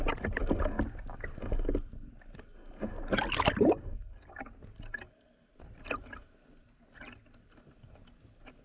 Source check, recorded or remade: recorded